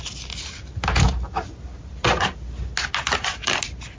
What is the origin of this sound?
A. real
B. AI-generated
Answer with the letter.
A